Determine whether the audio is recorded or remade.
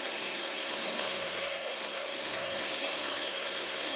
remade